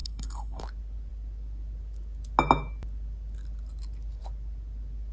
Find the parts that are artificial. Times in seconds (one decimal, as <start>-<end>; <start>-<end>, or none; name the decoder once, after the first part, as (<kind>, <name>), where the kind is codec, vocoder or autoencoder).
0.0-0.6 (codec, HILCodec)